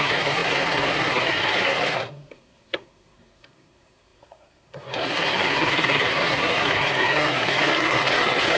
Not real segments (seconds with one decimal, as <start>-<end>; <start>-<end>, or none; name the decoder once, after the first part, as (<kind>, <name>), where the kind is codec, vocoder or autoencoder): 0.0-8.6 (codec, SNAC)